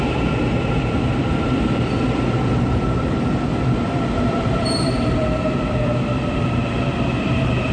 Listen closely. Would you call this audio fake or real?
fake